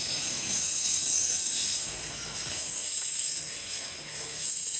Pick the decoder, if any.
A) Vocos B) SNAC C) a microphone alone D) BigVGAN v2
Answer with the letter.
B